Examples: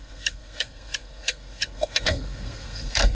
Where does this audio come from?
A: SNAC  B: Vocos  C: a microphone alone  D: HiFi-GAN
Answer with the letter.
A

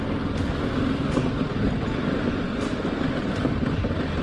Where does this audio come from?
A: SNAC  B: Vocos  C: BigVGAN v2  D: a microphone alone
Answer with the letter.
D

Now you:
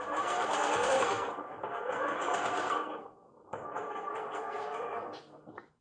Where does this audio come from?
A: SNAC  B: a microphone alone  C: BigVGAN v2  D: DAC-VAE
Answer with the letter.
A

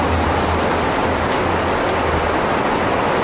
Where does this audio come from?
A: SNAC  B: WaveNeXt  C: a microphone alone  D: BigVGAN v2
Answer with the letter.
C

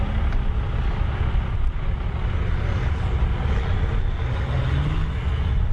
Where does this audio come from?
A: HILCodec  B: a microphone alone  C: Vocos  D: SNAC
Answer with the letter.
B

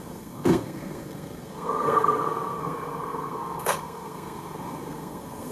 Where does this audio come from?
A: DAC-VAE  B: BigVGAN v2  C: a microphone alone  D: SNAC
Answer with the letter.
D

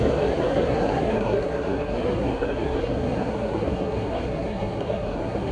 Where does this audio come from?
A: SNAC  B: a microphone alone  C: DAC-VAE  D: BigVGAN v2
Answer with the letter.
A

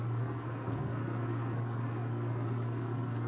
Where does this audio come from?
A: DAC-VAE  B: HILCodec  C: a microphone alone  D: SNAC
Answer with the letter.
D